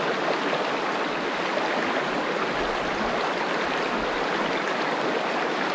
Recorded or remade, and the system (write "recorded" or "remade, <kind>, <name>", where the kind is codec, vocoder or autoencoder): recorded